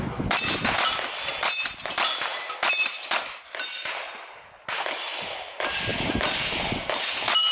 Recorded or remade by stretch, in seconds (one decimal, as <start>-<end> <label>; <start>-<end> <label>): 0.0-7.5 recorded